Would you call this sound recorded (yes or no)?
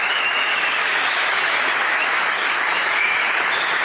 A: no